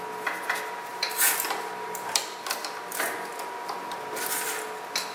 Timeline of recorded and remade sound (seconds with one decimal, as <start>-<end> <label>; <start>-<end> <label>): 0.0-0.9 recorded; 0.9-3.3 remade; 3.3-5.1 recorded